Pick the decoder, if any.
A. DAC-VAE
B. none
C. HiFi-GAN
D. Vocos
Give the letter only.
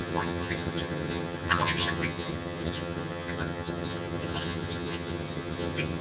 C